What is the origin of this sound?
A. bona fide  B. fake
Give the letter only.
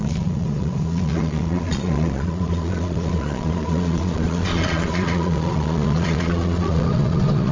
B